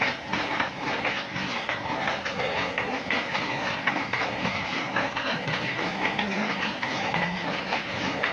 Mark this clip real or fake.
fake